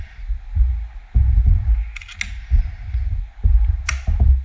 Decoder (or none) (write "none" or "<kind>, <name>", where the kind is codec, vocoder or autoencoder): none